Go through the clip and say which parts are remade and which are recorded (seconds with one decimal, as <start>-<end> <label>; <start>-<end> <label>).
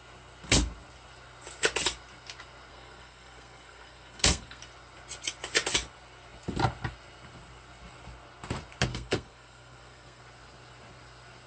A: 0.0-2.7 recorded; 2.7-4.6 remade; 4.6-8.9 recorded; 8.9-10.2 remade; 10.2-11.5 recorded